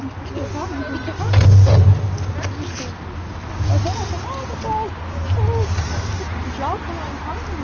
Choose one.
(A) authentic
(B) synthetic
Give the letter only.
A